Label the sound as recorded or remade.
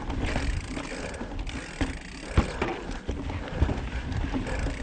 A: recorded